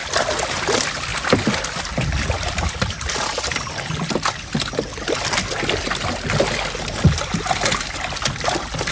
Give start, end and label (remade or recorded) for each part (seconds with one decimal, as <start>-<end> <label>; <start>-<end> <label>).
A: 0.0-8.9 recorded